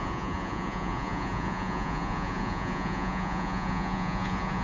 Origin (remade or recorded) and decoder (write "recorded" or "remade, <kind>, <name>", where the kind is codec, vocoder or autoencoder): remade, vocoder, Vocos